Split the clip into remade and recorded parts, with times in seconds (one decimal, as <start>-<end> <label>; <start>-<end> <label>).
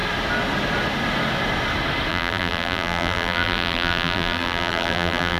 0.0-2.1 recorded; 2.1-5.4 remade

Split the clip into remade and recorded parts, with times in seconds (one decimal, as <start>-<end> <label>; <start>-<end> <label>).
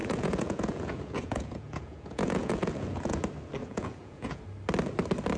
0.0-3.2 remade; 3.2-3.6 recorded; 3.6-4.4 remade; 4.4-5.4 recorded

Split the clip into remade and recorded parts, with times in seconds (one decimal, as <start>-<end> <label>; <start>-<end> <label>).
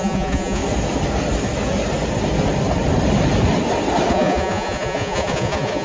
0.0-0.6 remade; 0.6-4.1 recorded; 4.1-5.8 remade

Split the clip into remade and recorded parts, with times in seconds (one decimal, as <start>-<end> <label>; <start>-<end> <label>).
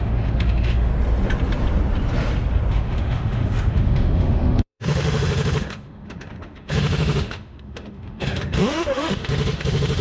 0.0-0.9 remade; 0.9-2.7 recorded; 2.7-10.0 remade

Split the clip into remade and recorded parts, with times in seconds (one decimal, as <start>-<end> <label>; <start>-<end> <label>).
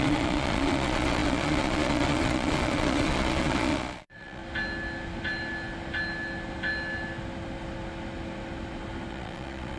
0.0-4.4 remade; 4.4-9.1 recorded; 9.1-9.8 remade